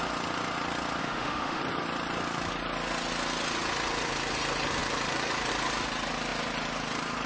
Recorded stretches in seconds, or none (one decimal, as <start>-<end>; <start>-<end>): 0.0-1.0; 1.6-7.3